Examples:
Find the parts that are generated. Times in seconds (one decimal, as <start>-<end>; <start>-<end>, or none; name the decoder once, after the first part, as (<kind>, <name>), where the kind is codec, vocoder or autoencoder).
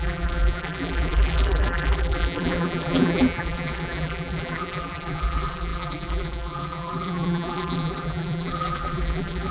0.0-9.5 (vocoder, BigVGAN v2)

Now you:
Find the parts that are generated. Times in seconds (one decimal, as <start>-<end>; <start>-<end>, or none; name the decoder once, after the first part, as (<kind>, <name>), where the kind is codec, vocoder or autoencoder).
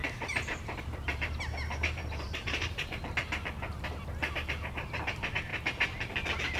0.0-3.0 (vocoder, BigVGAN v2)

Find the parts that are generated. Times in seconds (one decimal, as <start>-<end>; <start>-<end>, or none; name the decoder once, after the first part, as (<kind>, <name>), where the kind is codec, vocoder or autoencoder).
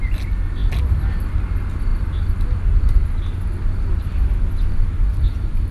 none